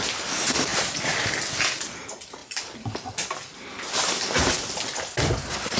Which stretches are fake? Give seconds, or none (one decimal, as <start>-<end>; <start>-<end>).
0.7-1.4; 2.4-2.9